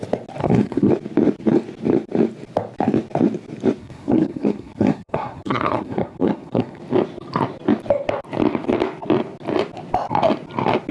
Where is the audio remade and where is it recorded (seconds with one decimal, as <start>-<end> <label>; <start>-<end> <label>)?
0.0-0.4 recorded; 0.4-0.9 remade; 0.9-3.8 recorded; 3.8-6.8 remade; 6.8-10.9 recorded